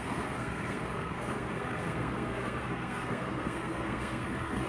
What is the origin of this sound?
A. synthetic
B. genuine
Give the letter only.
A